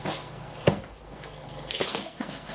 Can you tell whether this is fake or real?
fake